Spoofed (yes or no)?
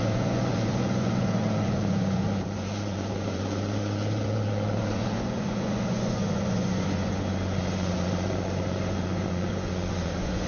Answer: yes